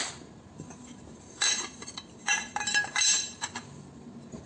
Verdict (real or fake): fake